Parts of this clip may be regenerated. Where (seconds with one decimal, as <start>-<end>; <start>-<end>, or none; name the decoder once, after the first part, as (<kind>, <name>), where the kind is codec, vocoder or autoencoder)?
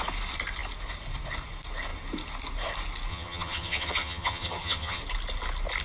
3.1-5.0 (vocoder, HiFi-GAN)